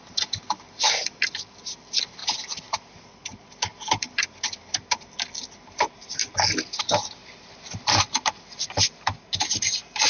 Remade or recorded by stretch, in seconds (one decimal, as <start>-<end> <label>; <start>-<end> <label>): 0.0-10.1 recorded